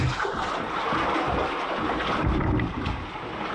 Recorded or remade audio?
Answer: recorded